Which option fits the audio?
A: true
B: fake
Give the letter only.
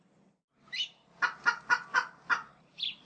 A